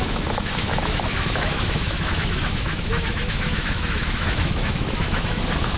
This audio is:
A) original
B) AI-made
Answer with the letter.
B